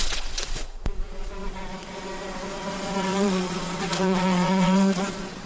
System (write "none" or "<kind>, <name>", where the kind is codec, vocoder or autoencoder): vocoder, Vocos